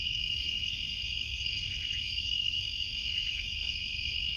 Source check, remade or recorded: remade